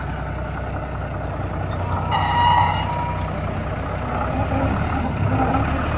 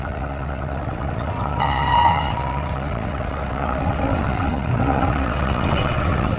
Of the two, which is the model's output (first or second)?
second